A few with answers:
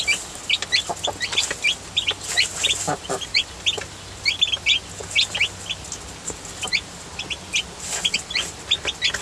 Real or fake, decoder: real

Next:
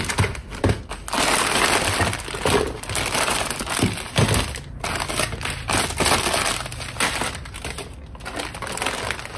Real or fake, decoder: real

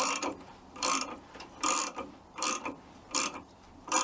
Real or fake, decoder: fake, vocoder, BigVGAN v2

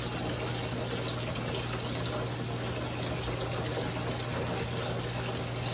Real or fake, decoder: real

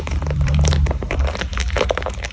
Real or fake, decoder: fake, vocoder, BigVGAN v2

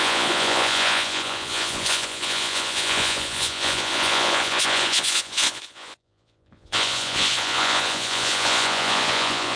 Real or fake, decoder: fake, vocoder, Vocos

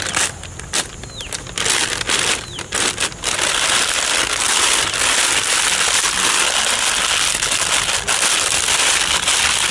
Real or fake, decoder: real